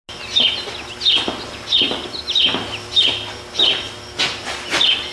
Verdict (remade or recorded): recorded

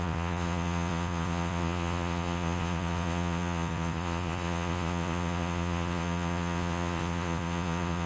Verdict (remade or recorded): remade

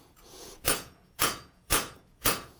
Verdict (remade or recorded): remade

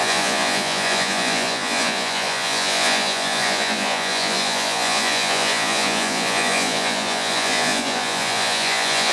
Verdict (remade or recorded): remade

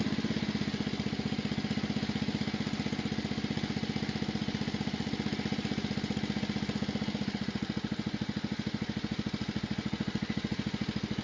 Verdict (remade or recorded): recorded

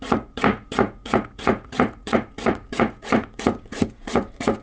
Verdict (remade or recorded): remade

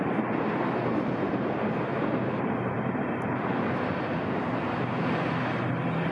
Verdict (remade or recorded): recorded